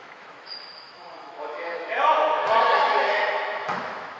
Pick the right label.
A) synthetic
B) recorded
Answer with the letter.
A